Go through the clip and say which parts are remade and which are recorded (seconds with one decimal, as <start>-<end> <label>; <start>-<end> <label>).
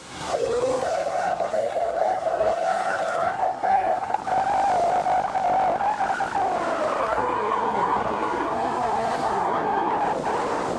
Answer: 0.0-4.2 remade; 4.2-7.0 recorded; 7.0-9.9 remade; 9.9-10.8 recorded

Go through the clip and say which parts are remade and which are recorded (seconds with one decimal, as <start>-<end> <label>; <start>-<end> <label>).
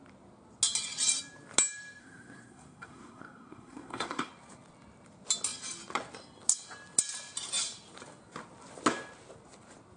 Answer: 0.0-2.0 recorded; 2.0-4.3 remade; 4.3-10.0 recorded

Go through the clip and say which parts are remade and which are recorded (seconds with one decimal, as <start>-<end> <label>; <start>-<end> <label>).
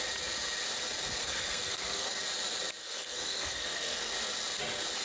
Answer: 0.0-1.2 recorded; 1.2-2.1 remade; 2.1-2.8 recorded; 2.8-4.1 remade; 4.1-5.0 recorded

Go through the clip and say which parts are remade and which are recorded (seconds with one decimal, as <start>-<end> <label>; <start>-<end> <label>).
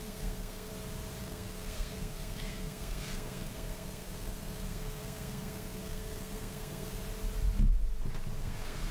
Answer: 0.0-0.7 remade; 0.7-1.2 recorded; 1.2-7.0 remade; 7.0-8.4 recorded; 8.4-8.9 remade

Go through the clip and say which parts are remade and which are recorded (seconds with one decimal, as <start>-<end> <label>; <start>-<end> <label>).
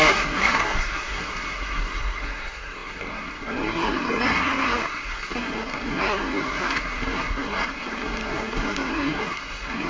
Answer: 0.0-9.9 remade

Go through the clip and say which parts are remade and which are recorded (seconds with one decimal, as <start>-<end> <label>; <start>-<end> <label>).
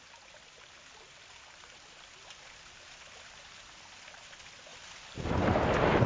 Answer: 0.0-6.1 recorded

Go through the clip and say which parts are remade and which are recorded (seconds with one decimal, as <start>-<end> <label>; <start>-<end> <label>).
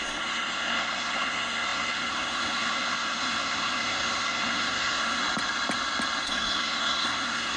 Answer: 0.0-5.2 remade; 5.2-6.2 recorded; 6.2-7.6 remade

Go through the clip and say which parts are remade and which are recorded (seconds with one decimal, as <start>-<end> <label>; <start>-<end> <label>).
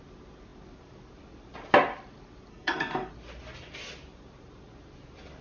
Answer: 0.0-2.5 recorded; 2.5-3.1 remade; 3.1-5.4 recorded